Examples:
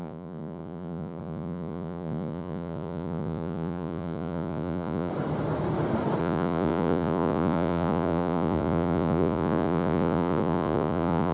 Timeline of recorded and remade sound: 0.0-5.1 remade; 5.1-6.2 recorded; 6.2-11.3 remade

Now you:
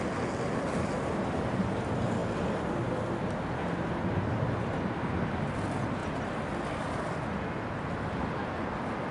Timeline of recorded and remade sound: 0.0-9.1 recorded

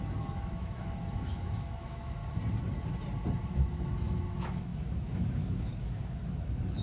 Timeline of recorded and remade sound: 0.0-2.2 remade; 2.2-3.5 recorded; 3.5-6.8 remade

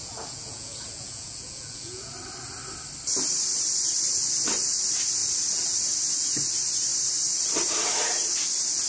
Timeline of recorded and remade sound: 0.0-2.1 remade; 2.1-8.9 recorded

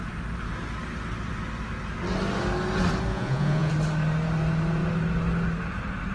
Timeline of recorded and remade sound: 0.0-3.1 recorded; 3.1-3.7 remade; 3.7-6.1 recorded

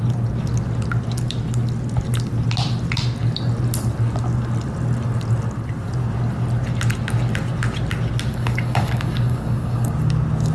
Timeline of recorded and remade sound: 0.0-8.3 recorded; 8.3-9.9 remade; 9.9-10.5 recorded

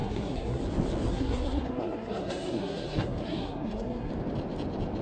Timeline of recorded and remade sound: 0.0-0.6 remade; 0.6-1.1 recorded; 1.1-4.1 remade; 4.1-5.0 recorded

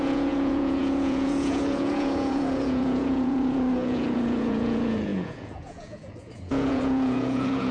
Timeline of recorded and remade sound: 0.0-7.7 remade